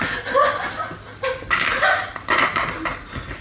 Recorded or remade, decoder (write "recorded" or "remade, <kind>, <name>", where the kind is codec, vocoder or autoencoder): recorded